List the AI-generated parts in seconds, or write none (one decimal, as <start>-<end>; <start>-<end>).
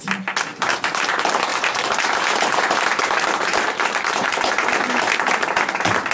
0.5-1.1; 1.5-5.1